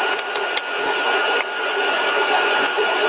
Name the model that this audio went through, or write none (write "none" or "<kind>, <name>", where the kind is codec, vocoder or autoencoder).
vocoder, Vocos